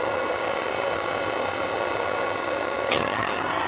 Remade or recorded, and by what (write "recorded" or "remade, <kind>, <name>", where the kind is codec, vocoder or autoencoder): remade, vocoder, HiFi-GAN